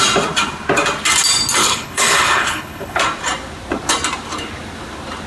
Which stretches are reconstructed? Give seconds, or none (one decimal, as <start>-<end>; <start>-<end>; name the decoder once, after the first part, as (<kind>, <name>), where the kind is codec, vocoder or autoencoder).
1.6-3.0 (codec, HILCodec)